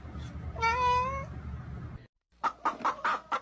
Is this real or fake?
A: real